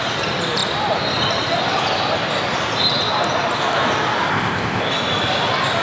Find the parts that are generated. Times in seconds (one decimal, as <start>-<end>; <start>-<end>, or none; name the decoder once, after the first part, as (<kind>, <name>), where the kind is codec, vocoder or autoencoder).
4.3-4.9 (codec, ZipCodec)